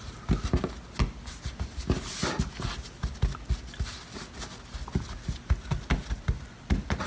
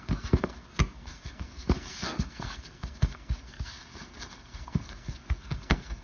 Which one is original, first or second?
first